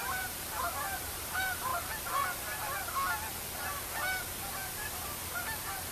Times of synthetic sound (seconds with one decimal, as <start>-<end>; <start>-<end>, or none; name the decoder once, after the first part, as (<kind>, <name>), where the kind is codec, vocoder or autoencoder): 0.0-1.7 (vocoder, BigVGAN v2); 4.5-5.9